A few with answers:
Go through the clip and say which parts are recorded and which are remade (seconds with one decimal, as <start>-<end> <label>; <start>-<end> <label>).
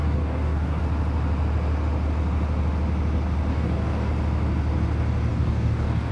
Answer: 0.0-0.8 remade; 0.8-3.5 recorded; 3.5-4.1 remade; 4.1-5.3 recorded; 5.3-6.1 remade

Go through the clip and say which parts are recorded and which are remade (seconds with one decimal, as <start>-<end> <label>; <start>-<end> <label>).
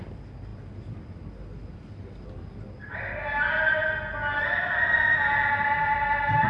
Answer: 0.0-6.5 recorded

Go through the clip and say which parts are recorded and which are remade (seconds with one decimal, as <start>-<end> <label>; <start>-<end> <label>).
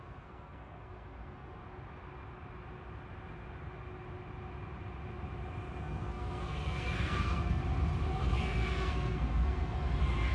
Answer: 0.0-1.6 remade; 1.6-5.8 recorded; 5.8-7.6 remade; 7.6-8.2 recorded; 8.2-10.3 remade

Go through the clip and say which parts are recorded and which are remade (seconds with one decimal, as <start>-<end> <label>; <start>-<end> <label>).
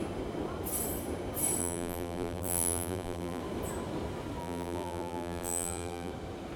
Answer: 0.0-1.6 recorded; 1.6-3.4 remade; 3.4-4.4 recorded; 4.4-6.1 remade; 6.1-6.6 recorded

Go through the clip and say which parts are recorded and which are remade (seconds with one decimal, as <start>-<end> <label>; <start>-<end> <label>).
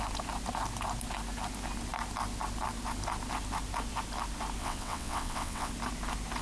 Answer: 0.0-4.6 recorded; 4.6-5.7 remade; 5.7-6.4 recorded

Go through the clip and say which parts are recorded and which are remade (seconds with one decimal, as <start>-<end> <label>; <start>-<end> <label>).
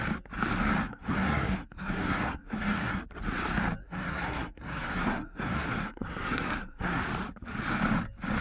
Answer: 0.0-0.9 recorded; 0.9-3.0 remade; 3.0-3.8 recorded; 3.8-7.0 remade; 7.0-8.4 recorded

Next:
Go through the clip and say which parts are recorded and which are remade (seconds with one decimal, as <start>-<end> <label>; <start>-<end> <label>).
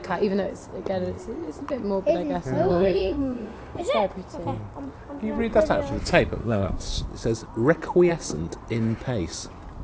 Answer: 0.0-2.7 recorded; 2.7-3.8 remade; 3.8-6.4 recorded; 6.4-7.0 remade; 7.0-9.8 recorded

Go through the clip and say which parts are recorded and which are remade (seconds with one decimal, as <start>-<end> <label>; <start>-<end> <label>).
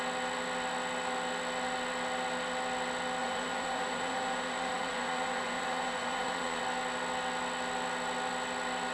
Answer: 0.0-3.2 recorded; 3.2-6.6 remade; 6.6-8.9 recorded